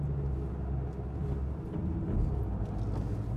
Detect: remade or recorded recorded